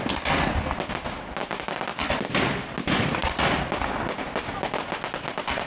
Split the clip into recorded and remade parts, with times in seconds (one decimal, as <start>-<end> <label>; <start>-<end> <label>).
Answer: 0.0-1.4 recorded; 1.4-2.1 remade; 2.1-5.7 recorded